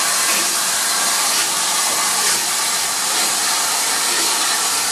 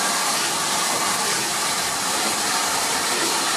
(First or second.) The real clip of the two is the first